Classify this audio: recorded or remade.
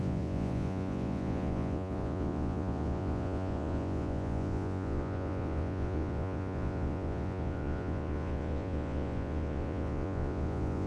remade